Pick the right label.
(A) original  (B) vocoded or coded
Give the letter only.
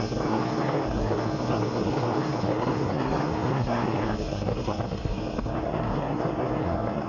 B